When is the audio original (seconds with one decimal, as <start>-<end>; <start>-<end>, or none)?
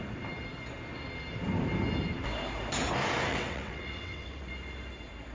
0.0-3.3; 4.5-5.3